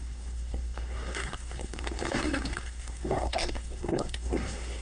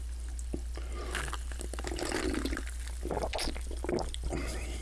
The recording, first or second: second